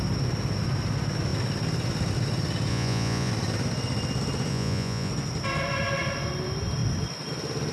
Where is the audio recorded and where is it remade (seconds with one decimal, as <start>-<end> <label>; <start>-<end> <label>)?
0.0-2.7 recorded; 2.7-3.3 remade; 3.3-4.5 recorded; 4.5-5.1 remade; 5.1-7.7 recorded